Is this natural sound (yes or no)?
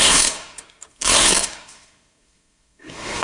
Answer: no